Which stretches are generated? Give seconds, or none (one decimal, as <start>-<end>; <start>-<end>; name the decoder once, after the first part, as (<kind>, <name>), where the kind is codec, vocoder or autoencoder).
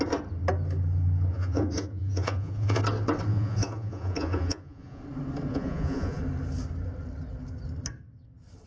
1.3-2.8 (vocoder, Vocos); 3.3-5.0; 5.5-6.2